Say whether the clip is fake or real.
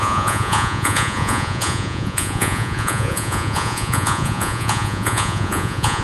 fake